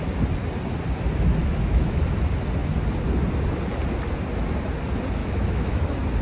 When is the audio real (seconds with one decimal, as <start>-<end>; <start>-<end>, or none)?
0.0-1.4; 2.0-5.2; 5.8-6.2